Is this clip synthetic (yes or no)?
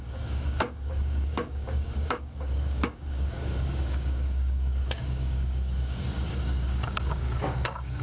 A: yes